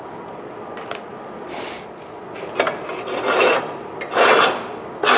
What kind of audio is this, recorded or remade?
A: recorded